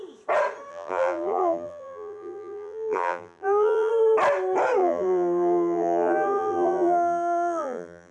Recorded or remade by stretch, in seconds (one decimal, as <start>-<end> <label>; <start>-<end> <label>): 0.0-0.7 recorded; 0.7-3.9 remade; 3.9-4.8 recorded; 4.8-8.1 remade